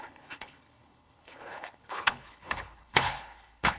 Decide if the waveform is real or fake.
fake